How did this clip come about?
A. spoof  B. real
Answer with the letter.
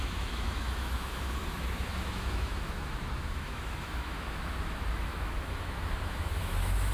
A